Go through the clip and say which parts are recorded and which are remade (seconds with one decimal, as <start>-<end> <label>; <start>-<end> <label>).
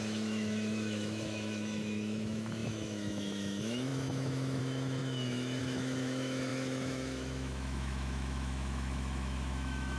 0.0-10.0 remade